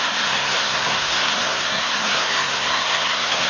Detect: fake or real fake